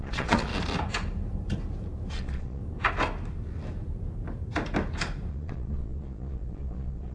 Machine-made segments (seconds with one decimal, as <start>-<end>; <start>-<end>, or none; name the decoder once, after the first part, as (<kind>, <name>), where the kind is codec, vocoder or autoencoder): 0.0-0.5 (vocoder, Vocos); 2.1-2.6; 5.3-7.1